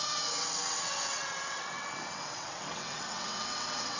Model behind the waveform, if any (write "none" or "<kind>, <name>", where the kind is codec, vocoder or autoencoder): vocoder, WaveNeXt